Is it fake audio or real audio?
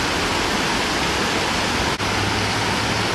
real